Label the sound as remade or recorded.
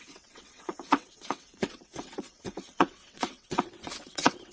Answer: remade